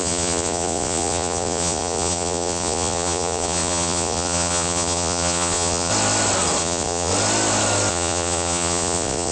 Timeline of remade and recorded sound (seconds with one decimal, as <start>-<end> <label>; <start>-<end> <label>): 0.0-5.9 remade; 5.9-6.6 recorded; 6.6-7.1 remade; 7.1-7.9 recorded; 7.9-9.3 remade

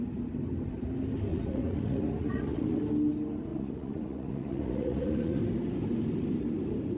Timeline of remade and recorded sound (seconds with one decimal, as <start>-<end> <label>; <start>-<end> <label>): 0.0-1.3 recorded; 1.3-2.8 remade; 2.8-3.5 recorded; 3.5-5.4 remade; 5.4-7.0 recorded